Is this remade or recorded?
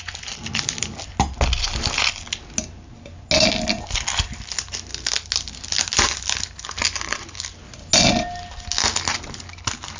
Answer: recorded